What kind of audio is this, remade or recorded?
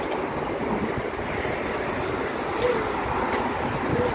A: recorded